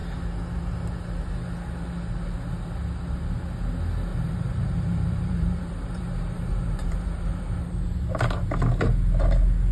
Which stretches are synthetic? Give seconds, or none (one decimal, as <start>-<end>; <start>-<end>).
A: 4.1-7.4